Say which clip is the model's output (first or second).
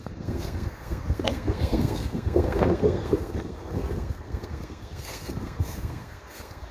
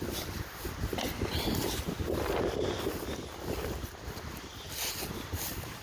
first